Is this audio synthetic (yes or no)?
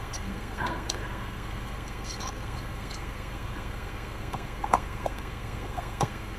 yes